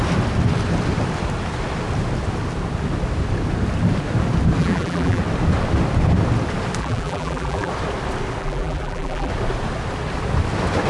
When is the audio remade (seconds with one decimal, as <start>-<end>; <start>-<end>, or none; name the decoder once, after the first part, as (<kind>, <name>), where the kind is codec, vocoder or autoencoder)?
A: 4.6-5.2 (vocoder, BigVGAN v2); 6.8-7.7; 8.4-9.3